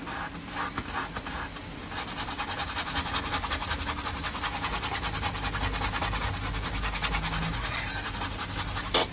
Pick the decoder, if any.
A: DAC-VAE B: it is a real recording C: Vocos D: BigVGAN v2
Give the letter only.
B